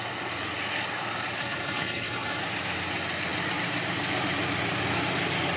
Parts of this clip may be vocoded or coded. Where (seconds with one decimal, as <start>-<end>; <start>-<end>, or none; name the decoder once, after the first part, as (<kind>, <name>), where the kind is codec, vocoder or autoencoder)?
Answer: 1.4-2.4 (codec, HILCodec)